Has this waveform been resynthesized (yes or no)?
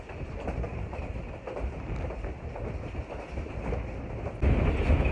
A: no